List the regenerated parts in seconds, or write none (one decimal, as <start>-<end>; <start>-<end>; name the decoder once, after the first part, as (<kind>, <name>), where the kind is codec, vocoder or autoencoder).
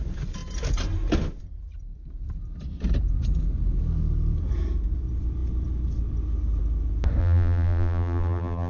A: 7.2-8.7 (vocoder, BigVGAN v2)